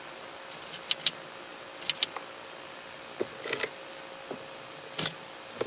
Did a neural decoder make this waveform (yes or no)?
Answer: no